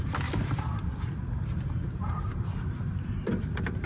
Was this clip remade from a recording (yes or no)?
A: yes